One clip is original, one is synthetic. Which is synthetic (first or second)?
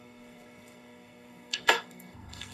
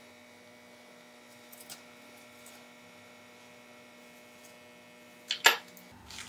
first